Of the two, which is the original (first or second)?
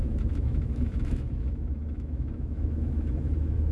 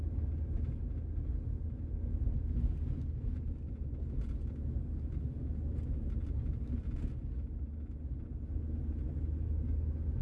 second